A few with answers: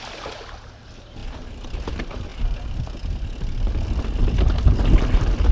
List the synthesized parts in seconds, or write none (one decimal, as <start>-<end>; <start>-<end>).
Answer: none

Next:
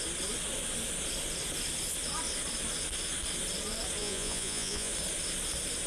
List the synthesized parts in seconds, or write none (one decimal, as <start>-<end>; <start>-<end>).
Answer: 4.0-4.9

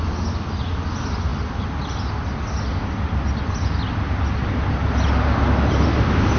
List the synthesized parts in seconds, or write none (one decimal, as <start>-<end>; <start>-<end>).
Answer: none

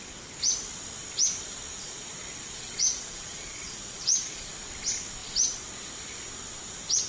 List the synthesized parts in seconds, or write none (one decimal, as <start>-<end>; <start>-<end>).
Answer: 1.7-4.5

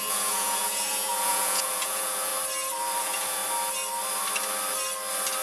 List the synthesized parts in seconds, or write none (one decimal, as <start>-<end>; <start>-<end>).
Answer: 0.0-2.3; 3.0-3.4

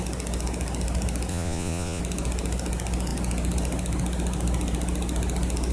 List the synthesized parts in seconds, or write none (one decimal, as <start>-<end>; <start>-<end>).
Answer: 1.3-2.0